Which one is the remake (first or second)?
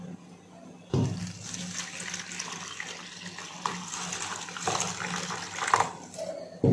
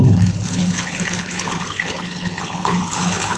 second